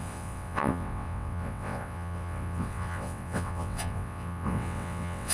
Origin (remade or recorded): remade